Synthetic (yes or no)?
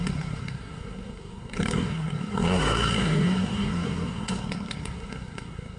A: yes